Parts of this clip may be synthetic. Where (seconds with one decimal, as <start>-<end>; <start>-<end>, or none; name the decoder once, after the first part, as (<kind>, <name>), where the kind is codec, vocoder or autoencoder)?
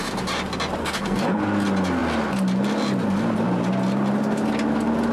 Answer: 0.8-1.4 (codec, SNAC)